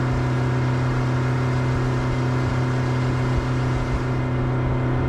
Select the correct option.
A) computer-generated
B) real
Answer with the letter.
B